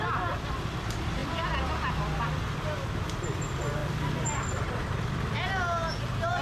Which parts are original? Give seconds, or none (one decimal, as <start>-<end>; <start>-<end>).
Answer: 0.0-6.4